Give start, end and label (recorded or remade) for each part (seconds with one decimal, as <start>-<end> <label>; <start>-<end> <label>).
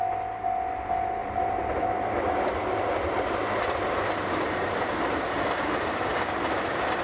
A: 0.0-1.2 recorded; 1.2-5.1 remade; 5.1-7.0 recorded